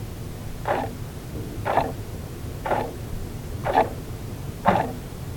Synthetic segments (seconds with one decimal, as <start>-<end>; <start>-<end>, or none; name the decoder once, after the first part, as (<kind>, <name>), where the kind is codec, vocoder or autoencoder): 0.4-3.2 (vocoder, BigVGAN v2); 3.6-5.4